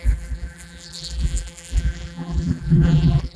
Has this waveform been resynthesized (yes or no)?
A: yes